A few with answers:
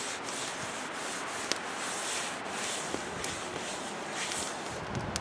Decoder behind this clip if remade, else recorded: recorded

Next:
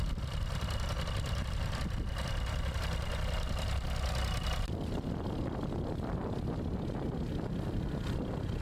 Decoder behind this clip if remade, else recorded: recorded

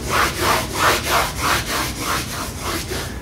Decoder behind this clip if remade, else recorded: recorded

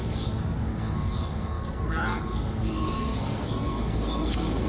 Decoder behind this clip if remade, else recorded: remade, codec, SNAC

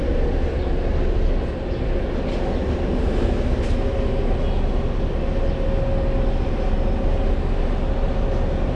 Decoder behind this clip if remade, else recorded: recorded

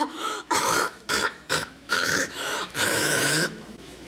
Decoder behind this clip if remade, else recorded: remade, autoencoder, DAC-VAE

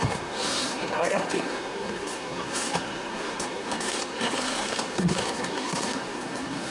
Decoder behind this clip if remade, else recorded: remade, codec, SNAC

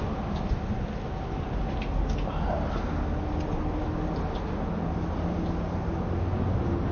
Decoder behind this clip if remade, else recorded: recorded